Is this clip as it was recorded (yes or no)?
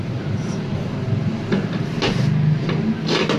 yes